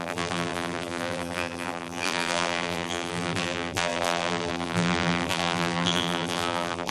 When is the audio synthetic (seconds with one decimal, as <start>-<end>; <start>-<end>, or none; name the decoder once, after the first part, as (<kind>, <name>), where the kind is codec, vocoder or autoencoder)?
0.0-6.9 (vocoder, BigVGAN v2)